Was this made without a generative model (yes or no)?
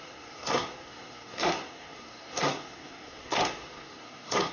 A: no